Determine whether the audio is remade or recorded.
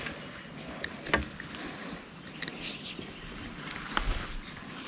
recorded